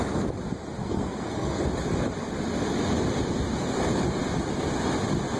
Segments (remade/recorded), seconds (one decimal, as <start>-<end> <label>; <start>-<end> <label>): 0.0-0.8 recorded; 0.8-1.6 remade; 1.6-5.4 recorded